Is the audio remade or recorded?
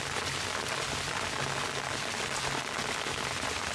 recorded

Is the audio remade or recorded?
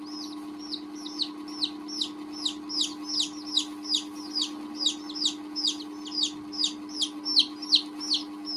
recorded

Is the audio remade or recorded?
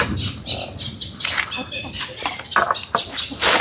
recorded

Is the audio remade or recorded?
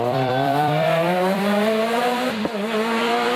remade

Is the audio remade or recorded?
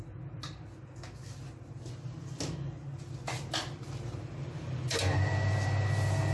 recorded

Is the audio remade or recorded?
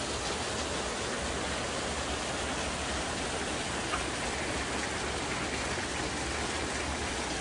recorded